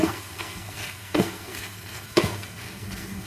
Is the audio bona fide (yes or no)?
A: no